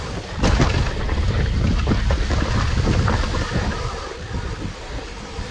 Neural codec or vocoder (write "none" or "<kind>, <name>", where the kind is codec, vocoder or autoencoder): none